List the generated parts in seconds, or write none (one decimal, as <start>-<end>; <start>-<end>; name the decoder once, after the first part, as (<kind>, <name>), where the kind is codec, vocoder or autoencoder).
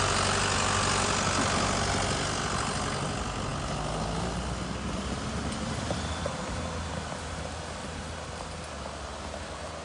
none